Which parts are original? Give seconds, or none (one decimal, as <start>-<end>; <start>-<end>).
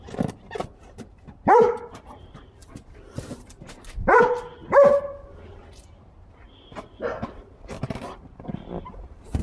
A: 2.6-7.0